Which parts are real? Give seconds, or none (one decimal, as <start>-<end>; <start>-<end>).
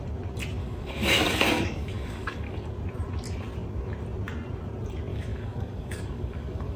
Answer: 0.0-0.6; 2.7-5.1